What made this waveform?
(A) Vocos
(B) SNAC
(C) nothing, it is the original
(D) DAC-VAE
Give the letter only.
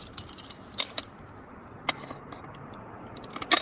C